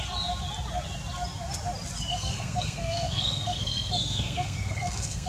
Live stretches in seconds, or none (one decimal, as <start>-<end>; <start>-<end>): 0.0-2.1